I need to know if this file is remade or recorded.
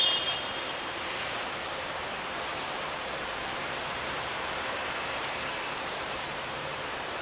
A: remade